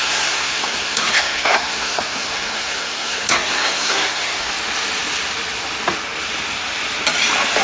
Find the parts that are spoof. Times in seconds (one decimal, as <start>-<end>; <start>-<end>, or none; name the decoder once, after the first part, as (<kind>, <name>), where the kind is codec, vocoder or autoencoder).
0.0-4.5 (codec, SNAC)